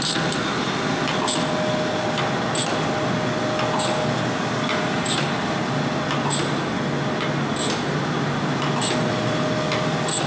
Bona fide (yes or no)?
yes